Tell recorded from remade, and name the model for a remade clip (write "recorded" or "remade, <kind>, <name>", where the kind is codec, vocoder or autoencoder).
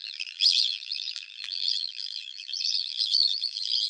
remade, vocoder, BigVGAN v2